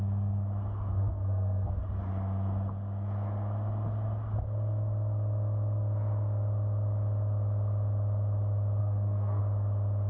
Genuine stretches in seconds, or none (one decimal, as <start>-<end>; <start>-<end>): 0.0-0.9; 1.7-8.8; 9.4-10.1